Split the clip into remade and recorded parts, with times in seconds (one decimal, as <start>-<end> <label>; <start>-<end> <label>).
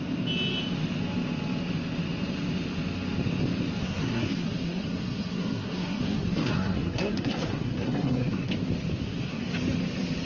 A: 0.0-3.8 recorded; 3.8-8.5 remade; 8.5-9.0 recorded; 9.0-9.5 remade; 9.5-10.3 recorded